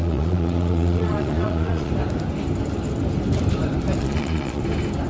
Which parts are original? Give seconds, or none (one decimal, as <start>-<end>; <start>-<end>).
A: 1.9-4.0; 4.6-5.1